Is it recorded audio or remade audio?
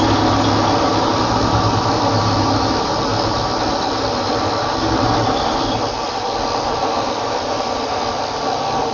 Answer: recorded